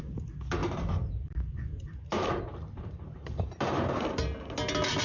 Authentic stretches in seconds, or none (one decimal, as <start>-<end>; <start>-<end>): 0.0-0.6; 3.6-5.0